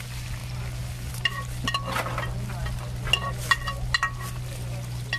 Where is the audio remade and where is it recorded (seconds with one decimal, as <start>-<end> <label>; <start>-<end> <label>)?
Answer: 0.0-5.2 recorded